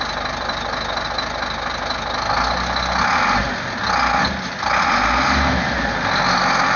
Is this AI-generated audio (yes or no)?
no